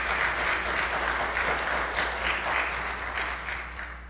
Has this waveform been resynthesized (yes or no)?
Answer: no